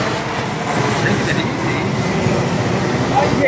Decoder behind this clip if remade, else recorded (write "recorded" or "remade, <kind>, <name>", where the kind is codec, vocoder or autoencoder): recorded